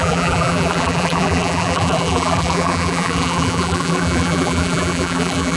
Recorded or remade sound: remade